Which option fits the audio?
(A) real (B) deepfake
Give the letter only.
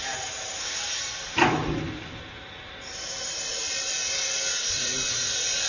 A